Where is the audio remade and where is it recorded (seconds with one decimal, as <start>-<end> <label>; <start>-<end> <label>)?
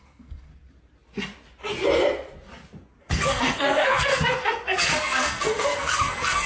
0.0-0.5 remade; 0.5-3.0 recorded; 3.0-6.5 remade